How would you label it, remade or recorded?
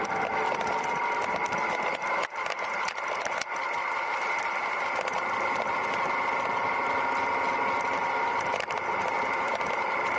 recorded